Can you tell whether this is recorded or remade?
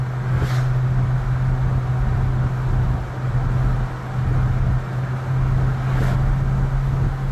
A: recorded